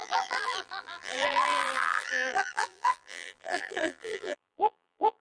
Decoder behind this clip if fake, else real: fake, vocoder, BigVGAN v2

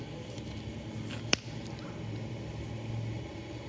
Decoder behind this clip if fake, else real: real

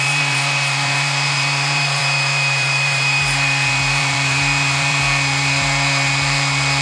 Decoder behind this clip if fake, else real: fake, vocoder, BigVGAN v2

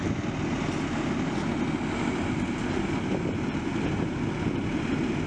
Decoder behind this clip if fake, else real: real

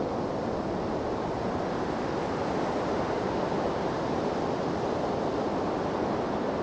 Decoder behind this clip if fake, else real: real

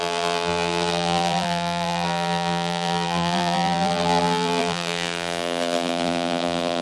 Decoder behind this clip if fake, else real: fake, vocoder, BigVGAN v2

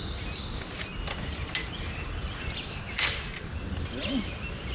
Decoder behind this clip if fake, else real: real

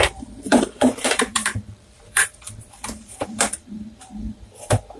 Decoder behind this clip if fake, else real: fake, vocoder, BigVGAN v2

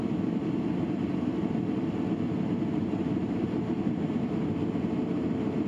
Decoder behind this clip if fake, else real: fake, vocoder, BigVGAN v2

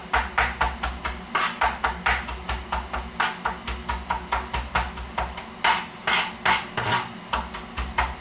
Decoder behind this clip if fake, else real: real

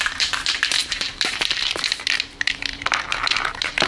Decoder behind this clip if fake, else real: fake, vocoder, BigVGAN v2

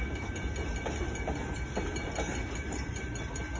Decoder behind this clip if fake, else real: real